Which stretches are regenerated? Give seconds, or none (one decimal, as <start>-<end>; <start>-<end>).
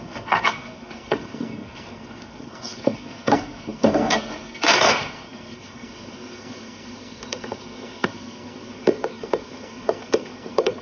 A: 0.0-10.8